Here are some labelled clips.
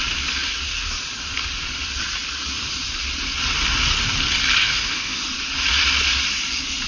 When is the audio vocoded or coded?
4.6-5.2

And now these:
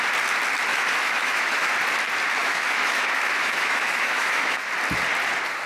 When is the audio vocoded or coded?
0.7-1.7; 2.4-4.7

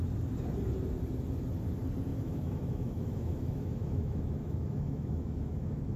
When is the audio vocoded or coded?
2.1-6.0

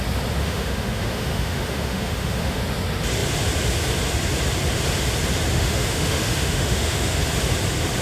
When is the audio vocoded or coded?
0.4-2.6; 5.5-7.2

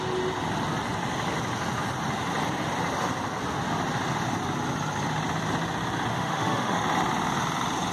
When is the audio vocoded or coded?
6.1-6.8

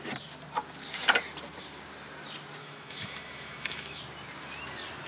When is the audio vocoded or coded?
2.6-4.0

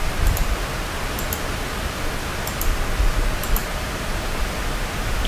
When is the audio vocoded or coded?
none

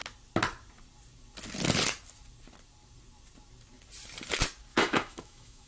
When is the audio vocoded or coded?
4.7-5.7